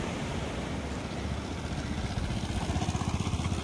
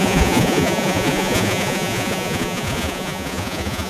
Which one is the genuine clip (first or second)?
first